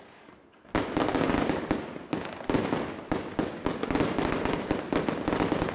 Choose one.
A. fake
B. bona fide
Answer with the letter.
B